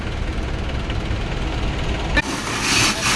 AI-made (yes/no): no